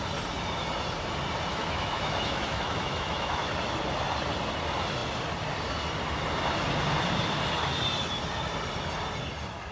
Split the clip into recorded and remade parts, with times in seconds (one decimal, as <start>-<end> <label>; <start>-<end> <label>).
0.0-1.5 recorded; 1.5-3.5 remade; 3.5-9.7 recorded